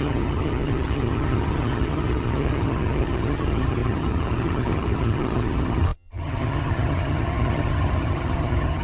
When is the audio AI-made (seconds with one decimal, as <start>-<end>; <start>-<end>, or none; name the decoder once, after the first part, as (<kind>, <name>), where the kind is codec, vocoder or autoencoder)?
0.0-8.8 (vocoder, HiFi-GAN)